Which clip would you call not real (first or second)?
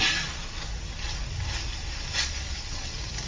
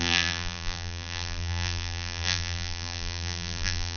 second